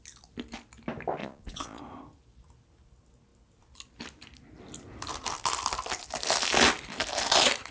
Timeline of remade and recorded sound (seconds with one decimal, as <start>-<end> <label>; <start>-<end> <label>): 0.0-1.2 recorded; 1.2-1.8 remade; 1.8-7.7 recorded